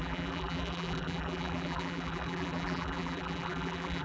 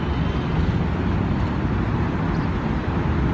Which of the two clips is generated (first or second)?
first